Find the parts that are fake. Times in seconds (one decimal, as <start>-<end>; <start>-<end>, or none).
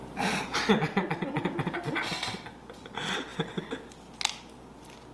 none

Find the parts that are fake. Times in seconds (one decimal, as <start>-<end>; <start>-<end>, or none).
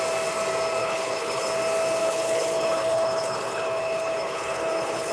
0.8-1.5; 2.0-5.1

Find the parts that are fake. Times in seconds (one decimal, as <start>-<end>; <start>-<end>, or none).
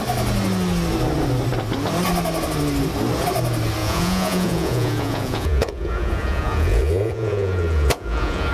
3.8-8.5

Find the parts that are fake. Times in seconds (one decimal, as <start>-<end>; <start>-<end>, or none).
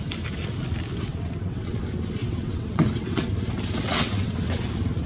1.1-1.8; 2.2-3.3; 3.9-4.6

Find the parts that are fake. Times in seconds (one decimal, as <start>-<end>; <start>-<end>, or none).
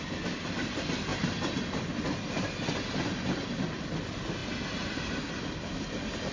none